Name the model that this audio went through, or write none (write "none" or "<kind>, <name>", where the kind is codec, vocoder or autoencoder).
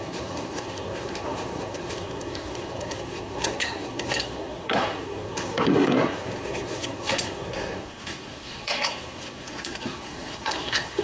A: codec, SNAC